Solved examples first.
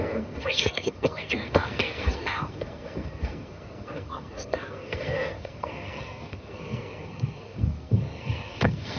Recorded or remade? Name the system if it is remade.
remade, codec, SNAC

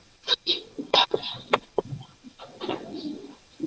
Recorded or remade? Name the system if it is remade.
remade, vocoder, WaveNeXt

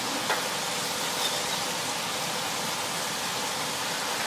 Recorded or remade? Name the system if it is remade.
recorded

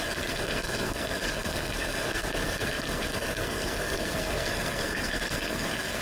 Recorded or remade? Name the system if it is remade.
remade, codec, SNAC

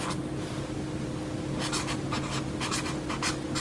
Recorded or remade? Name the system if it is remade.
recorded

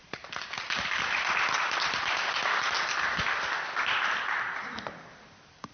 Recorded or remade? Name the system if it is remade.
remade, vocoder, BigVGAN v2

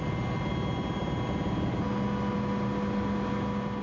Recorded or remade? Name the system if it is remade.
recorded